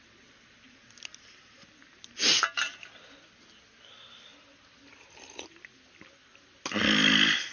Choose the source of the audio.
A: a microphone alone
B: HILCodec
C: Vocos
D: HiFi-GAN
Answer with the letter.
A